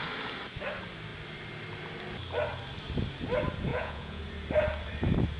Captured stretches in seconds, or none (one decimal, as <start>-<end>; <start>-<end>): 0.0-3.7; 4.2-5.4